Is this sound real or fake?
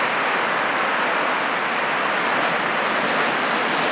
real